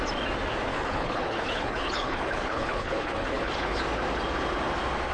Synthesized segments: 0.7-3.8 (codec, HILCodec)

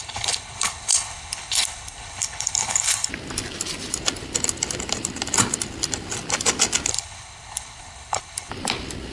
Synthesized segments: 0.0-3.1 (codec, HILCodec); 6.9-8.5

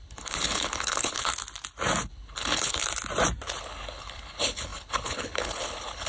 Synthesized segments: 0.0-1.3 (codec, HILCodec); 2.1-2.8; 3.6-6.1

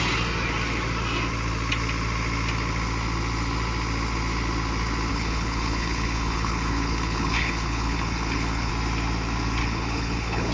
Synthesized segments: 5.1-8.7 (codec, HILCodec); 9.6-10.5

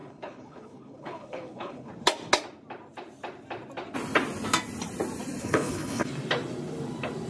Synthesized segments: 0.0-1.9 (codec, HILCodec); 5.4-6.1